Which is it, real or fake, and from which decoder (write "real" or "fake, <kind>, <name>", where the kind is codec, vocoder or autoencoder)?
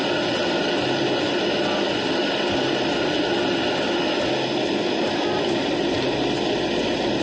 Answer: real